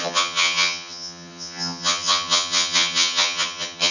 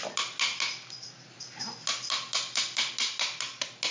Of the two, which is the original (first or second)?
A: second